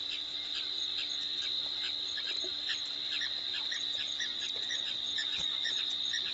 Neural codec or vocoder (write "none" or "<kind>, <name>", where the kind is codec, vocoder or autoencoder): none